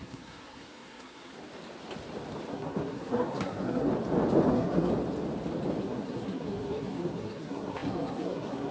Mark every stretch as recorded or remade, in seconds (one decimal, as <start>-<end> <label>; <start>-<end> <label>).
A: 0.0-1.3 remade; 1.3-2.5 recorded; 2.5-3.9 remade; 3.9-4.5 recorded; 4.5-4.9 remade; 4.9-5.8 recorded; 5.8-8.7 remade